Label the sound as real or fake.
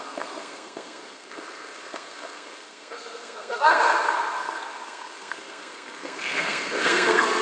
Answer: fake